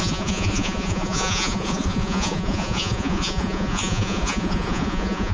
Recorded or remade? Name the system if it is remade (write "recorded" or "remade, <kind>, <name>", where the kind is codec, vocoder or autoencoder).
remade, vocoder, Vocos